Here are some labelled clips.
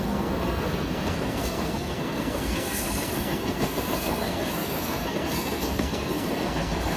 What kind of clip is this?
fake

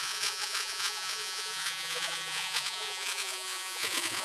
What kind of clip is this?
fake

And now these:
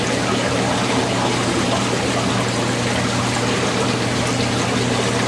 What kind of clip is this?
fake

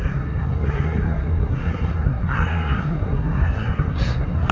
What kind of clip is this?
fake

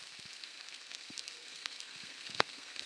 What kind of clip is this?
fake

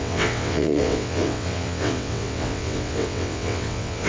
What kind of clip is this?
fake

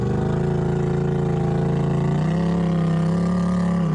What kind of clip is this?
real